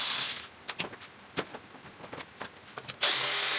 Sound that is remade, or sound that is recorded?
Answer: recorded